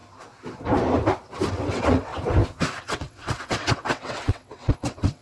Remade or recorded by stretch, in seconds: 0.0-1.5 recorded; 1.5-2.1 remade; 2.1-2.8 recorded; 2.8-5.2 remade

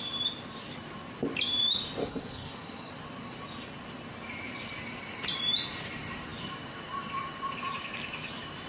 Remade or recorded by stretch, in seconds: 0.0-2.0 recorded; 2.0-2.9 remade; 2.9-8.7 recorded

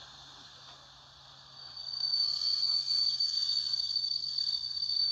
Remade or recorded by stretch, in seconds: 0.0-1.8 recorded; 1.8-5.1 remade

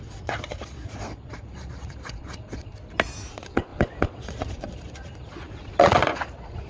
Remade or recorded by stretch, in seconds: 0.0-2.7 remade; 2.7-3.3 recorded; 3.3-6.7 remade

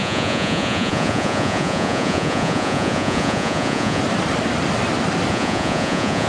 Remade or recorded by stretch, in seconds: 0.0-4.0 remade; 4.0-5.3 recorded; 5.3-6.3 remade